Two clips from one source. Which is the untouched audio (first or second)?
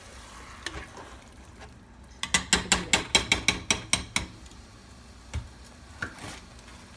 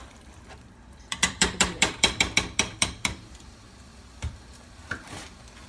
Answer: first